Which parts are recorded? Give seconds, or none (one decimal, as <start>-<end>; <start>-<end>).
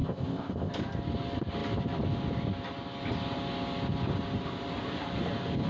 0.7-5.7